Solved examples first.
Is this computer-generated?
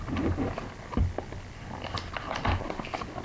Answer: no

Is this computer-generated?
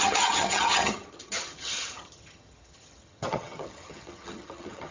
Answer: yes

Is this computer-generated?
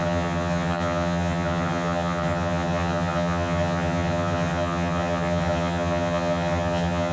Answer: yes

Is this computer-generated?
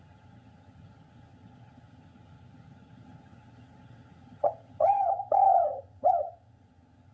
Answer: yes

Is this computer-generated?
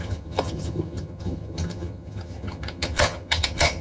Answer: yes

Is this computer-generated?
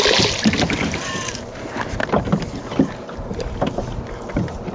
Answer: no